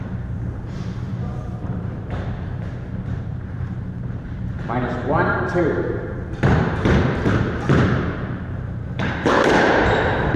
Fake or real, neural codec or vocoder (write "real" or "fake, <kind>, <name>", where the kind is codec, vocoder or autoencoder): fake, vocoder, BigVGAN v2